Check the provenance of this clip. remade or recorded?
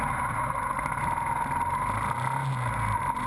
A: recorded